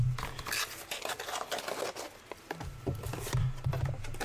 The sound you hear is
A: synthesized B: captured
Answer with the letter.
B